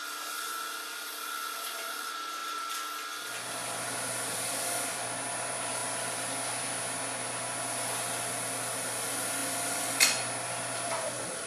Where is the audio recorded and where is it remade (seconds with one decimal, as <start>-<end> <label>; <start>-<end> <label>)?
0.0-11.5 recorded